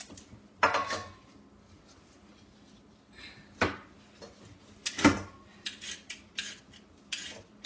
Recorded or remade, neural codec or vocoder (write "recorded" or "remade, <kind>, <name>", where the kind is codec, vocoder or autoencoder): recorded